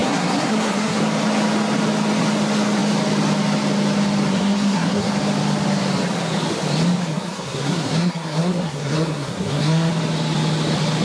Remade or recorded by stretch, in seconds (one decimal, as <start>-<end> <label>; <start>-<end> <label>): 0.0-1.0 remade; 1.0-4.3 recorded; 4.3-5.1 remade; 5.1-7.0 recorded; 7.0-9.9 remade; 9.9-11.0 recorded

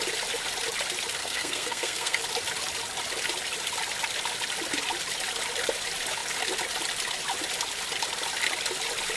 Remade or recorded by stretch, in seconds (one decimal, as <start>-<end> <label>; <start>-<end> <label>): 0.0-1.2 recorded; 1.2-2.2 remade; 2.2-9.2 recorded

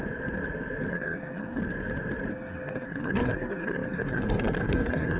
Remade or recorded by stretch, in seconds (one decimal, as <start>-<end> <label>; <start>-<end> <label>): 0.0-0.9 recorded; 0.9-1.6 remade; 1.6-2.3 recorded; 2.3-5.2 remade

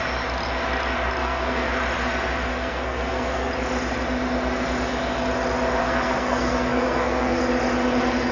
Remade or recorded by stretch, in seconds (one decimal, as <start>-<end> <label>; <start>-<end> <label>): 0.0-1.2 recorded; 1.2-1.7 remade; 1.7-2.5 recorded; 2.5-3.5 remade; 3.5-5.8 recorded; 5.8-7.4 remade; 7.4-8.3 recorded

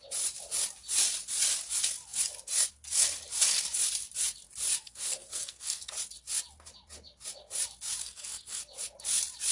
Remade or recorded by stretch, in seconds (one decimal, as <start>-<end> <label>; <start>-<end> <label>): 0.0-4.8 recorded; 4.8-5.9 remade; 5.9-8.0 recorded; 8.0-8.6 remade; 8.6-9.5 recorded

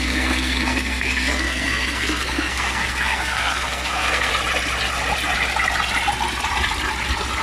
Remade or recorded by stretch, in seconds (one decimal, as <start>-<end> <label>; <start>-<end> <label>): 0.0-4.3 remade; 4.3-7.4 recorded